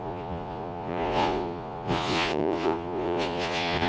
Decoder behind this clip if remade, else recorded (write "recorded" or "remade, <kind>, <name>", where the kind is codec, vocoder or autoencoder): remade, vocoder, Vocos